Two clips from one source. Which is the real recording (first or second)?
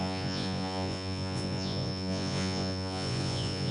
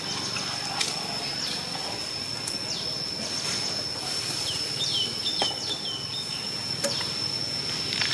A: second